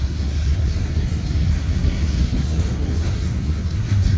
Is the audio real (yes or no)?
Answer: no